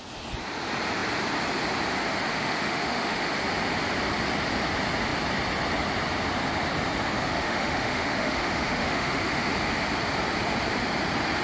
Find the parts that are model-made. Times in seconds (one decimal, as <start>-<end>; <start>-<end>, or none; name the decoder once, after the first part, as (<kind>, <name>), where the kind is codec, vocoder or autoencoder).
2.3-3.3 (autoencoder, DAC-VAE); 7.3-9.5